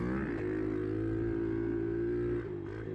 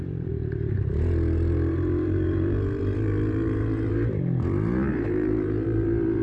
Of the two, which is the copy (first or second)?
second